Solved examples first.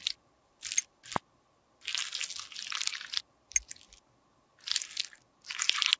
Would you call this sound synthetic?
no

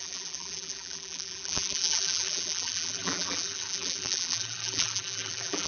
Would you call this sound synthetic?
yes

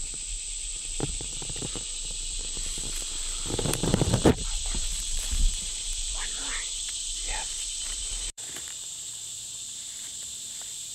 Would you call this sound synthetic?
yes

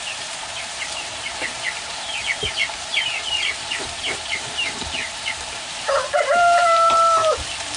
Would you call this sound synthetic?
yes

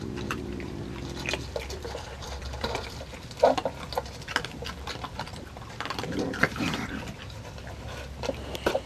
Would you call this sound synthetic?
yes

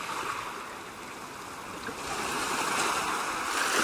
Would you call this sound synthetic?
no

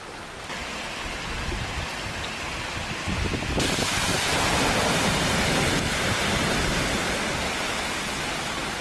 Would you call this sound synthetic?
no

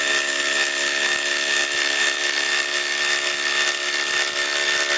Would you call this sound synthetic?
no